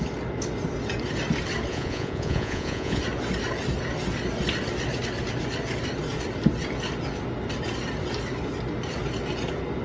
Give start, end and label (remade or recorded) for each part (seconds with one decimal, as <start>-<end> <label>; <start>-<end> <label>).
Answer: 0.0-1.7 recorded; 1.7-3.0 remade; 3.0-9.8 recorded